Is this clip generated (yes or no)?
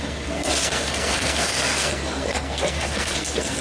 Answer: yes